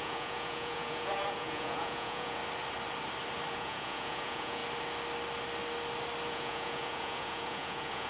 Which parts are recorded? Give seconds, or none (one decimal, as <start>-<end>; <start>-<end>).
2.4-3.5; 4.6-6.3